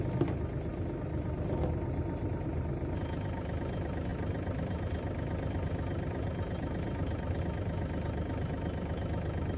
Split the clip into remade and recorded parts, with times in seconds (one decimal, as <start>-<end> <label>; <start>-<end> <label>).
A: 0.0-0.7 recorded; 0.7-2.3 remade; 2.3-4.1 recorded; 4.1-7.4 remade; 7.4-9.6 recorded